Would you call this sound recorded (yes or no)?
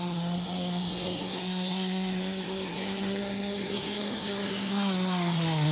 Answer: no